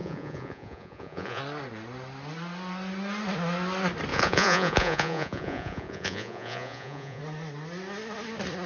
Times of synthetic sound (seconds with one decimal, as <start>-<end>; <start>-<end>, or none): 0.0-1.4; 4.1-7.2